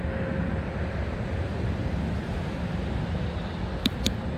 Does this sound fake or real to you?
real